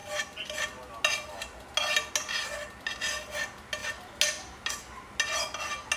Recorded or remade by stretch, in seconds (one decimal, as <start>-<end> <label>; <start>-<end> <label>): 0.0-6.0 recorded